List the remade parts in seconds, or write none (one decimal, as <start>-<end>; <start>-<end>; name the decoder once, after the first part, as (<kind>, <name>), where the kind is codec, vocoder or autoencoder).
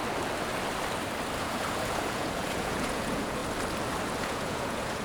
1.4-3.4 (vocoder, Vocos); 4.2-5.0